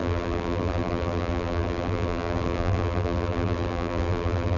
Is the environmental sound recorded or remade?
remade